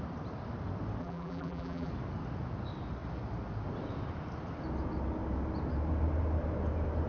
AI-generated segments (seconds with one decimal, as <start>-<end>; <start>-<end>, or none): 1.0-1.9